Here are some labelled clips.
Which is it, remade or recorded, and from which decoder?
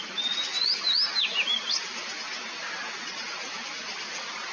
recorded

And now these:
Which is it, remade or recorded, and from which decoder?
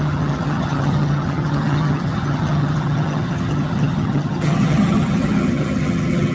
remade, vocoder, HiFi-GAN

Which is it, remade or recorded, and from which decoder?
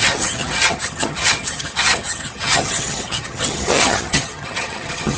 remade, vocoder, HiFi-GAN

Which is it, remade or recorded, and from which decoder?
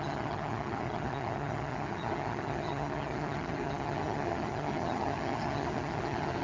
remade, vocoder, HiFi-GAN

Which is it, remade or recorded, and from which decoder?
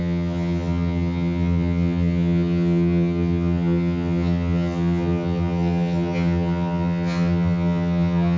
remade, vocoder, HiFi-GAN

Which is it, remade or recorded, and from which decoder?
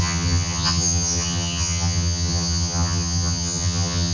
remade, vocoder, HiFi-GAN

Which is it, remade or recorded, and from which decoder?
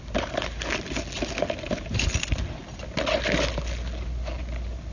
recorded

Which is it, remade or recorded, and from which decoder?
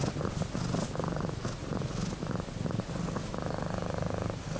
recorded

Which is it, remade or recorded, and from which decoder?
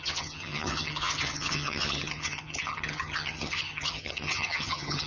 remade, vocoder, HiFi-GAN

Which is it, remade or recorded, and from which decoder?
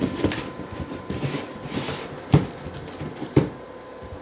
recorded